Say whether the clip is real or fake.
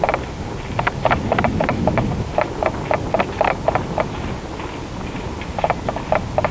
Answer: real